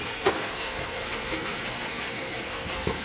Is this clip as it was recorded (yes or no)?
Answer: no